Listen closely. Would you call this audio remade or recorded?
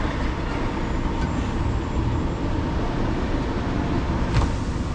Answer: recorded